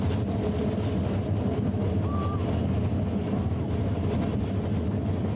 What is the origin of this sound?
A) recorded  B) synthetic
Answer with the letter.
A